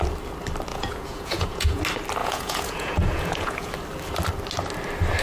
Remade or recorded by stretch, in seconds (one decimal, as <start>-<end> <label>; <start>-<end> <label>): 0.0-0.7 recorded; 0.7-1.8 remade; 1.8-2.2 recorded; 2.2-3.7 remade; 3.7-5.2 recorded